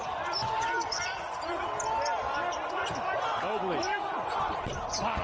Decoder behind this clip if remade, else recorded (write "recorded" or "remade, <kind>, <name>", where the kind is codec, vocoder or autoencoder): recorded